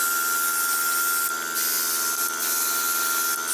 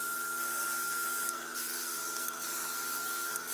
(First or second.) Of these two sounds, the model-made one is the second